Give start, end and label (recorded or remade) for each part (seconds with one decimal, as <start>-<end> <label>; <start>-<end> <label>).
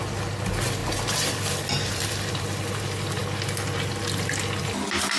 0.0-0.8 recorded; 0.8-2.8 remade; 2.8-5.2 recorded